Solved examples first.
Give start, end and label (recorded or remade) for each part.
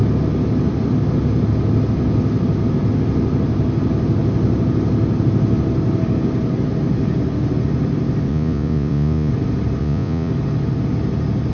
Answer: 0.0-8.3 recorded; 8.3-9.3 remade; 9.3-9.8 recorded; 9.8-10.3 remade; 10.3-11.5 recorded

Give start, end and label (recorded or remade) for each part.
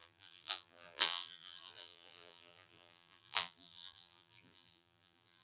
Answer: 0.0-5.4 remade